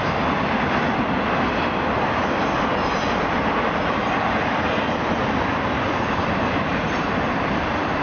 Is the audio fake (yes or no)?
no